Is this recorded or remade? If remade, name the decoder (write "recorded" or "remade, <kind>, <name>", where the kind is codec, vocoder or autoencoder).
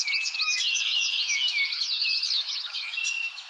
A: remade, autoencoder, DAC-VAE